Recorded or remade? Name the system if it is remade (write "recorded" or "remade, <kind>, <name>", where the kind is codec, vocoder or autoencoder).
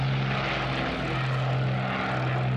recorded